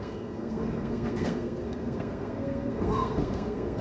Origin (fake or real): fake